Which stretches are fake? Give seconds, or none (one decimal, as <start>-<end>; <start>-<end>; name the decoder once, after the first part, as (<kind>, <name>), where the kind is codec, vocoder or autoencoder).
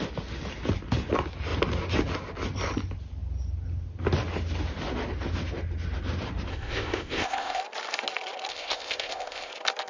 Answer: 6.5-7.6 (codec, ZipCodec); 8.5-9.5